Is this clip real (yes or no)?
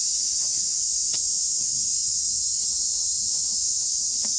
no